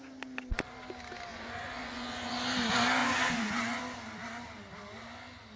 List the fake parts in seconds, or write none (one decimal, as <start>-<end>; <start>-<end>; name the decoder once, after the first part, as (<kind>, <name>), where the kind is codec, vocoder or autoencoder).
1.3-2.3 (vocoder, Vocos); 3.0-3.8